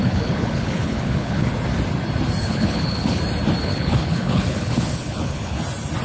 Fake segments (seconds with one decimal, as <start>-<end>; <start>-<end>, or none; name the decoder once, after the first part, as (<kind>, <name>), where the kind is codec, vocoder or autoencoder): 0.0-1.5 (codec, HILCodec); 2.4-3.2; 3.6-5.6